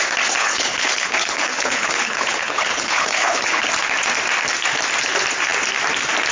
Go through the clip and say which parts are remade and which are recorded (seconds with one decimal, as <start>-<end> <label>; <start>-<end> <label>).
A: 0.0-0.4 recorded; 0.4-3.7 remade; 3.7-6.3 recorded